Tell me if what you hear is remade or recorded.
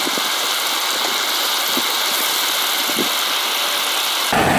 recorded